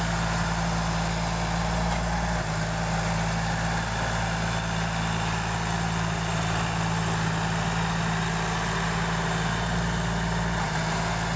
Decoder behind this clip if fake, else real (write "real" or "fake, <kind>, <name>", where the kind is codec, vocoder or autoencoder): real